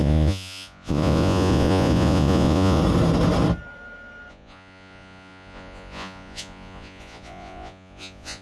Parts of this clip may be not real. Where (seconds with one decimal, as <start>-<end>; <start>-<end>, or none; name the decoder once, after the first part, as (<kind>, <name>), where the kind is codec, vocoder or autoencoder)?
0.0-2.8 (vocoder, Vocos); 4.3-8.4